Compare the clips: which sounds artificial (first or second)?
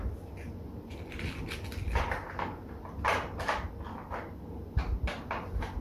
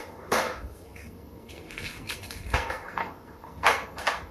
second